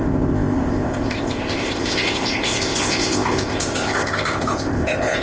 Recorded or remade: remade